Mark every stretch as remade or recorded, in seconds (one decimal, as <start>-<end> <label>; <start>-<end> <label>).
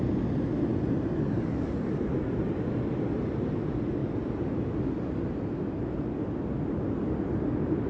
0.0-7.9 recorded